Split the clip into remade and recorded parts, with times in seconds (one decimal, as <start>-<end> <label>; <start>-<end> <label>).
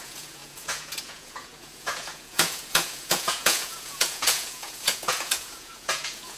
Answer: 0.0-6.4 remade